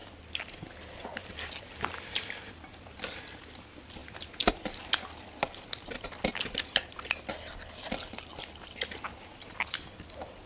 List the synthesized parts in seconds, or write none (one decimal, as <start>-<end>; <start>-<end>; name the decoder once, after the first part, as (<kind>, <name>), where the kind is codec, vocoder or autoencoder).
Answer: none